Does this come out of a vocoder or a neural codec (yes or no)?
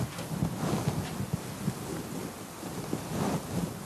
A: no